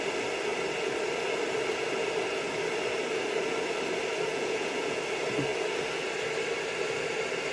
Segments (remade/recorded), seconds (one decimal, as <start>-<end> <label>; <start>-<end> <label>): 0.0-4.3 recorded; 4.3-5.0 remade; 5.0-7.5 recorded